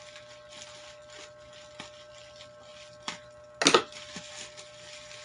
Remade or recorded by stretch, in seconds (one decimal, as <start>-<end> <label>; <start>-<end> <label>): 0.0-5.2 recorded